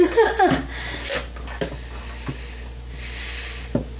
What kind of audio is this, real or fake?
real